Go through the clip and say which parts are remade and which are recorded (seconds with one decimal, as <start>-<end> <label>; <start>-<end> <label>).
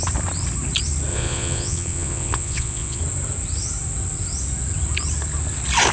0.0-1.1 recorded; 1.1-3.0 remade; 3.0-5.9 recorded